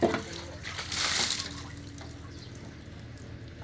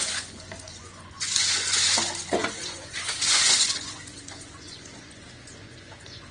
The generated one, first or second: second